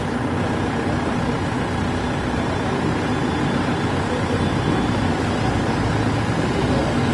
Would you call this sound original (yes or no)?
yes